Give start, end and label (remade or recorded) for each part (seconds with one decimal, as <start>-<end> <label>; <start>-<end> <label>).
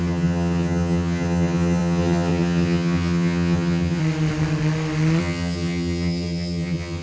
0.0-4.0 remade; 4.0-5.2 recorded; 5.2-7.0 remade